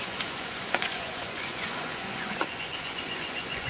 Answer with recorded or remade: remade